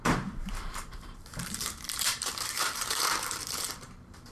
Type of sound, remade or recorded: remade